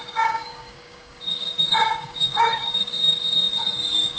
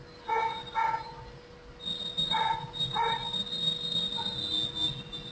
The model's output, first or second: first